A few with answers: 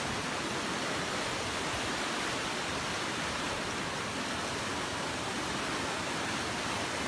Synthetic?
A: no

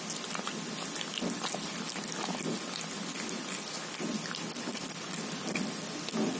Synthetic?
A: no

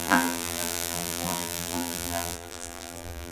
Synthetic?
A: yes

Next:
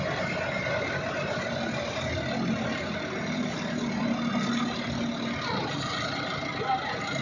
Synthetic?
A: no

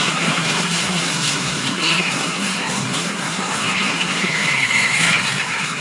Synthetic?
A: yes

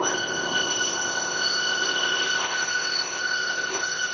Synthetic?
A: yes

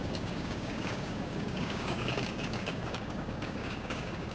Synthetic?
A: yes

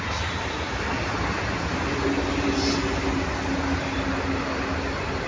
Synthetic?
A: no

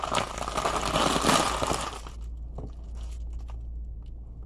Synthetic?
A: no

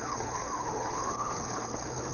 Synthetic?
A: yes